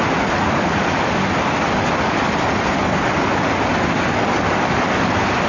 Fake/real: real